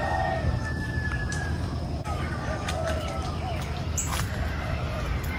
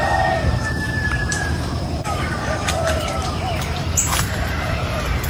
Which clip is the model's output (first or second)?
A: second